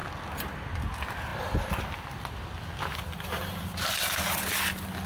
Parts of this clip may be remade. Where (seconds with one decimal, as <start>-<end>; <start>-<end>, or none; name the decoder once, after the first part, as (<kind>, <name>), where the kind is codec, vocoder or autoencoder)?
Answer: none